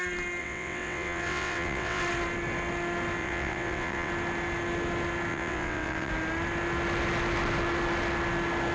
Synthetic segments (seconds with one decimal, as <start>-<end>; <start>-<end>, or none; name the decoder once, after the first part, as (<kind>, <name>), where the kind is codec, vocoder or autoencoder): 0.4-2.0 (vocoder, WaveNeXt); 3.2-4.1; 5.3-6.1